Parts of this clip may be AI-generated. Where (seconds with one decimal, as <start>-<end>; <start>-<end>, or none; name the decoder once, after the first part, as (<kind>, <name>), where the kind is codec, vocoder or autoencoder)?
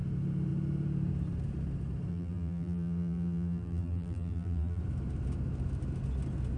2.1-4.8 (vocoder, BigVGAN v2)